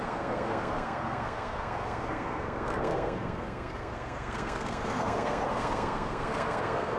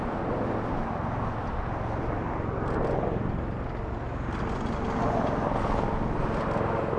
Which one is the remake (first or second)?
first